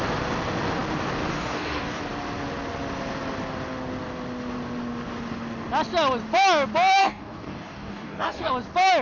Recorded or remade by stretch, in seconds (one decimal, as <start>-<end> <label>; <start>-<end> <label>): 0.0-1.3 recorded; 1.3-2.0 remade; 2.0-7.0 recorded; 7.0-8.5 remade; 8.5-9.0 recorded